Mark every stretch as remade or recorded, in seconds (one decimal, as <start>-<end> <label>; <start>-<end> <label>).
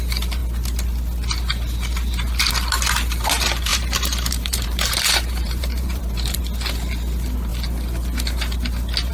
0.0-3.7 recorded; 3.7-6.4 remade; 6.4-9.1 recorded